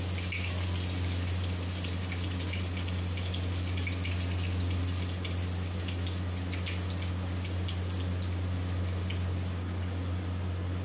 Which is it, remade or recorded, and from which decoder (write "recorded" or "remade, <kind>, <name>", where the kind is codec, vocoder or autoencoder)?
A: recorded